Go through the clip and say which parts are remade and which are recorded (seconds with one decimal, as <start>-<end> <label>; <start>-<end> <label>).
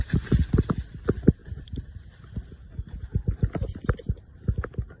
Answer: 0.0-1.4 recorded; 1.4-2.0 remade; 2.0-5.0 recorded